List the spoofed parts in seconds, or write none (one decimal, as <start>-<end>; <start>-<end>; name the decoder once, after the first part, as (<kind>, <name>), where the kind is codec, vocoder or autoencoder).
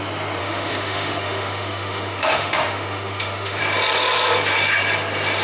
0.4-3.6 (autoencoder, DAC-VAE)